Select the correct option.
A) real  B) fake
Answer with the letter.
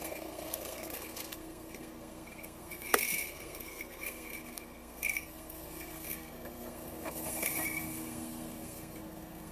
B